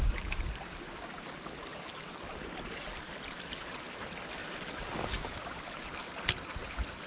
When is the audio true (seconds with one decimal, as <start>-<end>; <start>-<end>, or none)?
0.0-7.1